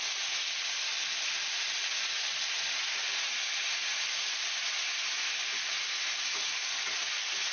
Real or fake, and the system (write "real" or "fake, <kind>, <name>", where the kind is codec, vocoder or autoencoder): real